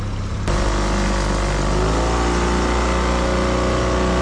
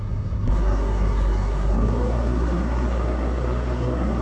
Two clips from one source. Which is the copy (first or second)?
second